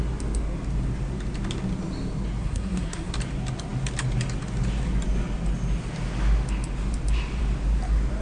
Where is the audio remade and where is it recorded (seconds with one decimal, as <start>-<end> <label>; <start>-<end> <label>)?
0.0-2.4 recorded; 2.4-3.1 remade; 3.1-8.2 recorded